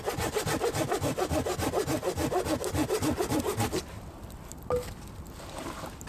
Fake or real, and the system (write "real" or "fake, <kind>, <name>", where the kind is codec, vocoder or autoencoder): real